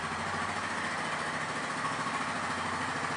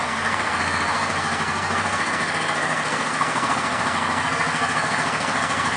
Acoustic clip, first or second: first